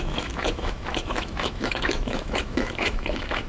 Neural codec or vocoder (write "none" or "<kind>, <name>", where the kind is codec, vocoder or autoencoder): autoencoder, DAC-VAE